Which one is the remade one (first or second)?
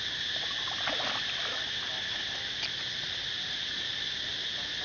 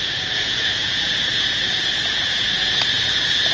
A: second